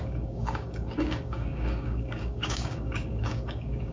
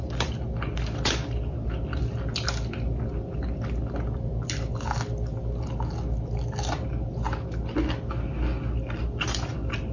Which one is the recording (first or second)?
second